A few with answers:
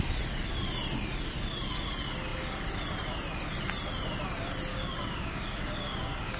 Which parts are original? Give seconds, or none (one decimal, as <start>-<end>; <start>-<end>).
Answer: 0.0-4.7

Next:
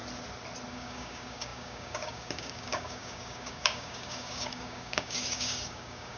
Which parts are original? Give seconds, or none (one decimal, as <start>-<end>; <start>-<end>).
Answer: 0.0-0.7

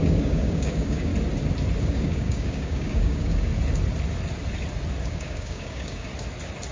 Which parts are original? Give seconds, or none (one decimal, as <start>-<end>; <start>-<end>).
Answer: 1.1-1.8; 3.5-5.0; 6.1-6.7

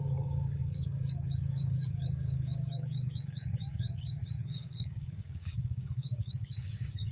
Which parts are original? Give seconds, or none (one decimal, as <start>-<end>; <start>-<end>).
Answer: none

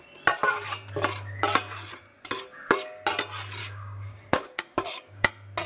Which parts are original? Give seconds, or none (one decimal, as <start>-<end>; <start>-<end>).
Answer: 0.0-3.6; 5.3-5.7